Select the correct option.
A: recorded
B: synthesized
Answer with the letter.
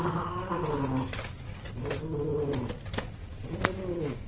A